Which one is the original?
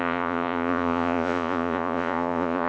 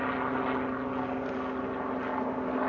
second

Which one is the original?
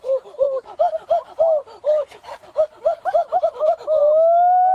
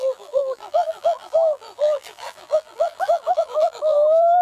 first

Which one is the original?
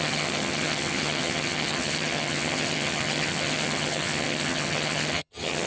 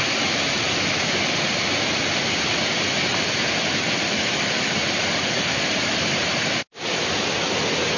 second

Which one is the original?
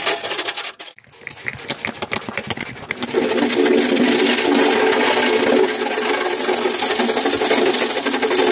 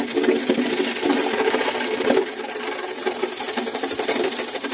first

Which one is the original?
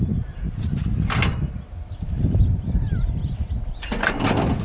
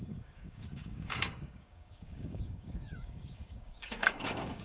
first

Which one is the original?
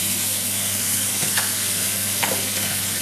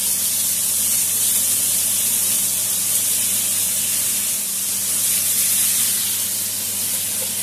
second